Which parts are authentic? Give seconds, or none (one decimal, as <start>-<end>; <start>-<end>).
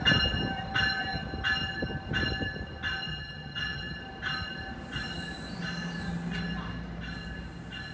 0.0-3.1; 4.0-7.9